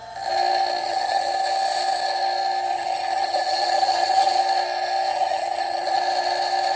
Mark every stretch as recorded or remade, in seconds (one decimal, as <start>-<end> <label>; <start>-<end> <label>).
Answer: 0.0-0.8 recorded; 0.8-1.3 remade; 1.3-2.7 recorded; 2.7-4.4 remade; 4.4-5.1 recorded; 5.1-6.0 remade; 6.0-6.8 recorded